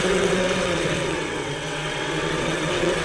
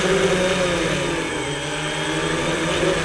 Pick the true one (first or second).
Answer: second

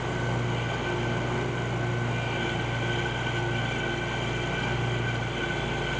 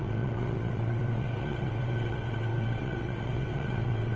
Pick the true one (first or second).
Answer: first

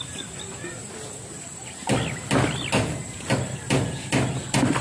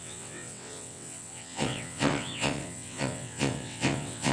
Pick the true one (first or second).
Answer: first